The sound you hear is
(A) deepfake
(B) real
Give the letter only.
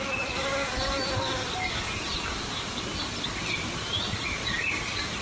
B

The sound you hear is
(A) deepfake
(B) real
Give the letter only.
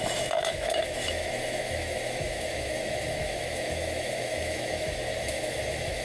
A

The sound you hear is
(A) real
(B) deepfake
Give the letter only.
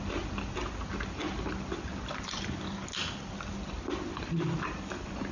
A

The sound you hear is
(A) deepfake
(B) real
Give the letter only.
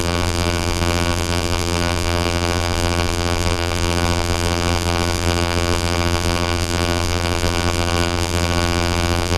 A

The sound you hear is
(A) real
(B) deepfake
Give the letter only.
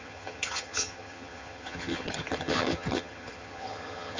B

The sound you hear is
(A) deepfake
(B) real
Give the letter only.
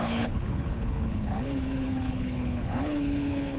A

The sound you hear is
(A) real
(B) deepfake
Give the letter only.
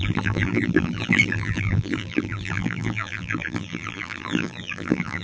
B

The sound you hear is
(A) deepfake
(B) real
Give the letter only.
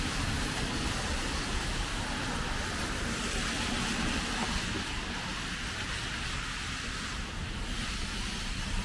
B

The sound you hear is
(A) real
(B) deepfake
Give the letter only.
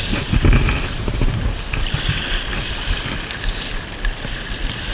A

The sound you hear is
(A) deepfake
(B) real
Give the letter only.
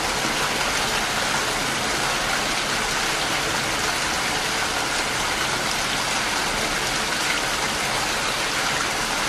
B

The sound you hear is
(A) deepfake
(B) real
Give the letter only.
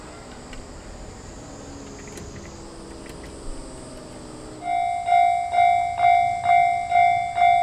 B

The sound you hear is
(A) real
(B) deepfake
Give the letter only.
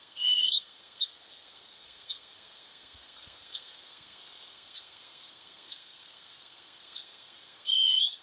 B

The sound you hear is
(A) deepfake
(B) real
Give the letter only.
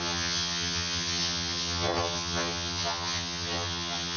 A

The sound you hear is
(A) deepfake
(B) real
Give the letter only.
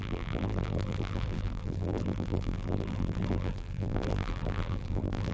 A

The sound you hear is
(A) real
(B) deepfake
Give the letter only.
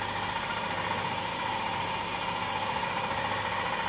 A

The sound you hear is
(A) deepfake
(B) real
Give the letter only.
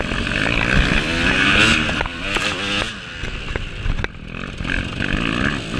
B